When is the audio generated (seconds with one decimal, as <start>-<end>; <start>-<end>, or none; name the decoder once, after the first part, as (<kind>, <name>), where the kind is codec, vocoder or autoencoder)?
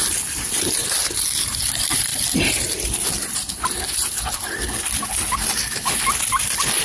none